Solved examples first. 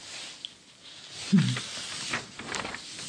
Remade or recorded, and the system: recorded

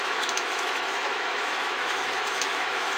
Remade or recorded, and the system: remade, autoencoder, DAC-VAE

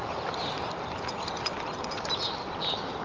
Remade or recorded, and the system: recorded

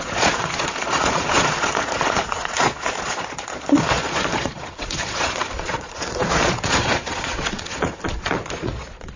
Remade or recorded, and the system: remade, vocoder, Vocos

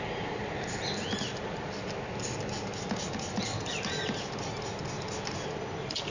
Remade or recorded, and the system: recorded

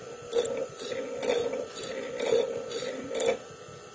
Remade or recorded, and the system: recorded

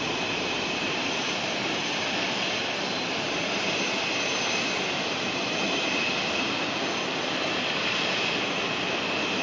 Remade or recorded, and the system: remade, vocoder, BigVGAN v2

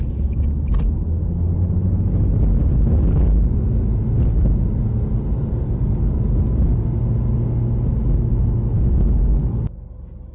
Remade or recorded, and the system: recorded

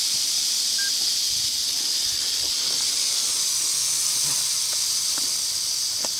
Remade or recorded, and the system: recorded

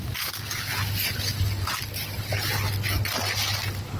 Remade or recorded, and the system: recorded